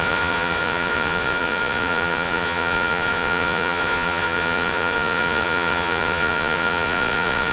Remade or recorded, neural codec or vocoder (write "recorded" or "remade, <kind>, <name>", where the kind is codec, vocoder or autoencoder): remade, vocoder, Vocos